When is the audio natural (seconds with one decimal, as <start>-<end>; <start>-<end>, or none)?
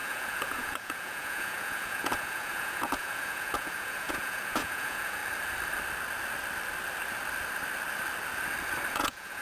5.2-8.9